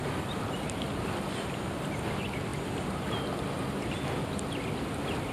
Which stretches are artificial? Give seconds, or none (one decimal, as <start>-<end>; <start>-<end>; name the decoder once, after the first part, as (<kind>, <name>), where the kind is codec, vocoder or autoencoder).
2.5-3.1 (vocoder, BigVGAN v2)

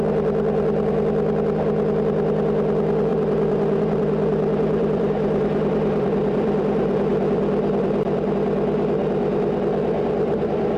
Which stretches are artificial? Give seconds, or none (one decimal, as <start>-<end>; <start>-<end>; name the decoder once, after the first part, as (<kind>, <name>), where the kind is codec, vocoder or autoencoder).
3.1-8.3 (vocoder, BigVGAN v2)

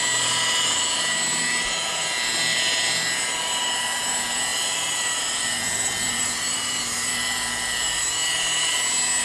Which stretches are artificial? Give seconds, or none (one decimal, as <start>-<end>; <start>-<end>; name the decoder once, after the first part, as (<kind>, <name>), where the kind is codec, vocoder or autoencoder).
4.5-8.0 (vocoder, BigVGAN v2)

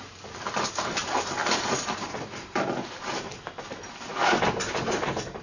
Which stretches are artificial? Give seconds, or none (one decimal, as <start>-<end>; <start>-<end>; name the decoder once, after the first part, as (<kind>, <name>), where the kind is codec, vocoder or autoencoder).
0.0-5.4 (vocoder, BigVGAN v2)

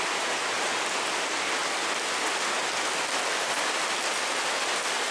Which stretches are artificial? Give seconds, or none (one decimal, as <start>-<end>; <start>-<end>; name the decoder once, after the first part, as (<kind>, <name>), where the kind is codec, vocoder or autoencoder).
none

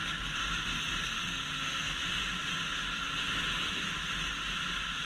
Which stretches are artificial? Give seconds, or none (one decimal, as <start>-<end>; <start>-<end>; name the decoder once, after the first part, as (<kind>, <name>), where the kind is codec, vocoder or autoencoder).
1.0-2.0 (codec, SNAC)

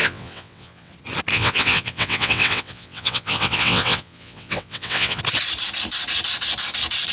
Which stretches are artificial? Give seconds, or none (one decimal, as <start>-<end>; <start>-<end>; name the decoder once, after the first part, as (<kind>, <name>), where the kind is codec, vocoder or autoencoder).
0.0-0.9 (vocoder, WaveNeXt); 1.3-5.2